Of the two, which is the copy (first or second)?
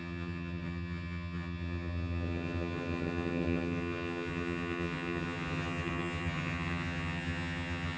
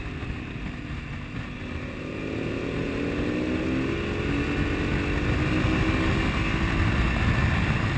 first